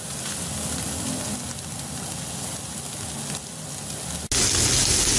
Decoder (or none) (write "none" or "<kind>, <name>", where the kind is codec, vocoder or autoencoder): none